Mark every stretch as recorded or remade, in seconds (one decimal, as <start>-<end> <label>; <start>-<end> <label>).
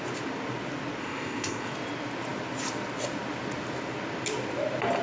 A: 0.0-1.0 recorded; 1.0-1.7 remade; 1.7-5.0 recorded